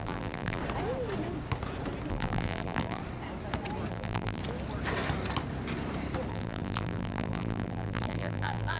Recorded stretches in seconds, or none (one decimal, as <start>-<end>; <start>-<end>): 0.6-2.1; 3.0-3.9; 4.4-6.3